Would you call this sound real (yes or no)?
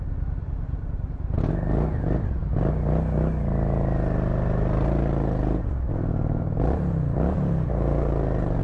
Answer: yes